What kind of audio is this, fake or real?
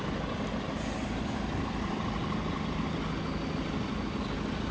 real